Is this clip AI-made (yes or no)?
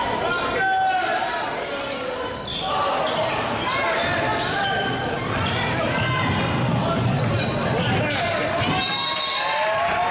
no